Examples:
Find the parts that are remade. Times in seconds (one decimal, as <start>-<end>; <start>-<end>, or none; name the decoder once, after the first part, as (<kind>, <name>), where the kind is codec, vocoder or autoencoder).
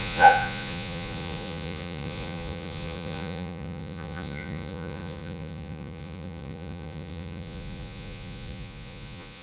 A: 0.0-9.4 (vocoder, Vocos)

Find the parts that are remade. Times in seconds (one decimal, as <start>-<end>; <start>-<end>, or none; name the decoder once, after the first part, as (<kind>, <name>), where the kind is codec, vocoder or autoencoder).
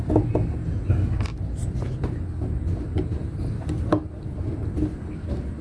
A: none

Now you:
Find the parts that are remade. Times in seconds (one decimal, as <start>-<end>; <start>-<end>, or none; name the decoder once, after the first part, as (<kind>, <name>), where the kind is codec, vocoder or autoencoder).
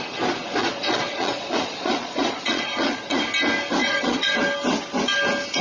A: 0.6-3.2 (vocoder, Vocos); 3.8-4.4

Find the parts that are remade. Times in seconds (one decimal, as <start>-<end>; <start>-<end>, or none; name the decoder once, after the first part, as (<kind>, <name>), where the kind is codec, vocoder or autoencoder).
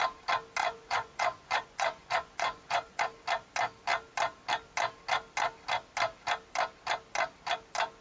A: 0.6-3.0 (vocoder, Vocos)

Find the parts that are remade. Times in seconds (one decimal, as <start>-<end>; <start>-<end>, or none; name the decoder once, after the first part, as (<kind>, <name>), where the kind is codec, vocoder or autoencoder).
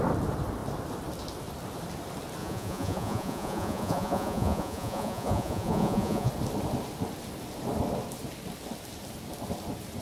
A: 2.4-6.3 (vocoder, Vocos)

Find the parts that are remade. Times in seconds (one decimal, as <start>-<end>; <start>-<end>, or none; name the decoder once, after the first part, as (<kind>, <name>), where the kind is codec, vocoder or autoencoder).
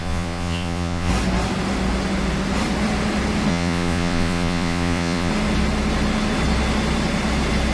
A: 0.0-1.1 (vocoder, Vocos); 3.5-5.3